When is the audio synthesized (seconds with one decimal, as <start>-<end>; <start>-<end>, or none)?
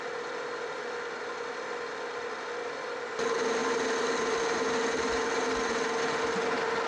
3.6-4.2